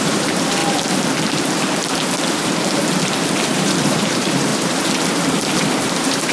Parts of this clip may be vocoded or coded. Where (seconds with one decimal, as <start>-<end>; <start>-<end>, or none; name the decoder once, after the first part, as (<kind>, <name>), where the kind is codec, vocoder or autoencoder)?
0.0-0.6 (vocoder, BigVGAN v2); 3.4-6.3